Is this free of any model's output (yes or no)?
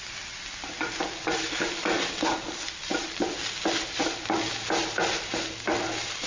yes